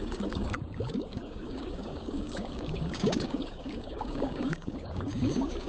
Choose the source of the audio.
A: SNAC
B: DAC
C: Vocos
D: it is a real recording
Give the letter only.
B